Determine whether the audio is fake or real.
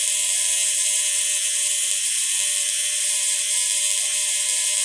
real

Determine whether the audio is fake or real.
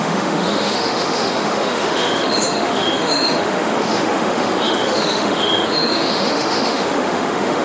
fake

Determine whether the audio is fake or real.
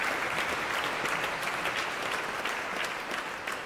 real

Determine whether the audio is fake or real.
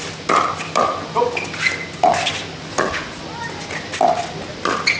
real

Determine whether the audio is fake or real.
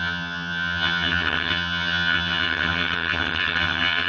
fake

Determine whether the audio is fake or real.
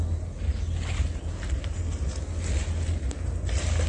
real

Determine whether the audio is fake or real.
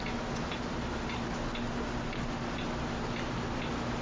real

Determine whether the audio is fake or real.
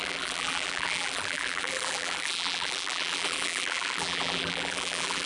fake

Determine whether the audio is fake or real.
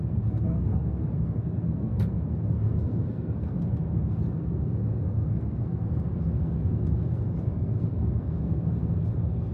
fake